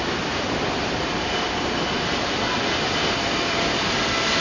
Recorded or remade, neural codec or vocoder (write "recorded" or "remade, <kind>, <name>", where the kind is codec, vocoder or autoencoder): recorded